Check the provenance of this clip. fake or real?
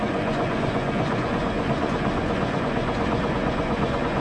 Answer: fake